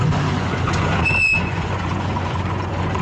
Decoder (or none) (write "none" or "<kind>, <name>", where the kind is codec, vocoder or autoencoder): vocoder, Vocos